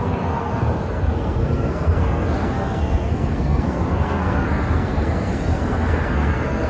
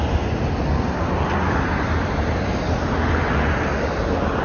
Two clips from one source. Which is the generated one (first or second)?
first